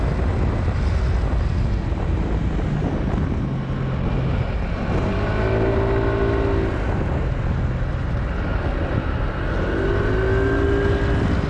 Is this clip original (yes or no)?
yes